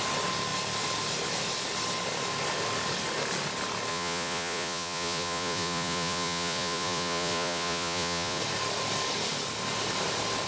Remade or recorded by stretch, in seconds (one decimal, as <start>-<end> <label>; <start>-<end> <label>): 0.0-3.9 recorded; 3.9-8.4 remade; 8.4-10.5 recorded